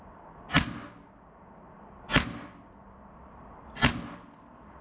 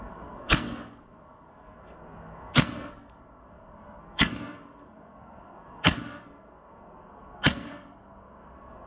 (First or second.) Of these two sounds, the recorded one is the first